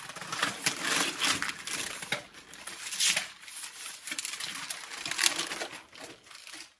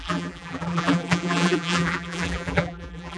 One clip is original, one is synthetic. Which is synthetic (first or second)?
second